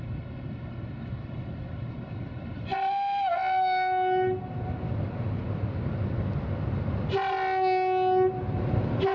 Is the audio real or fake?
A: real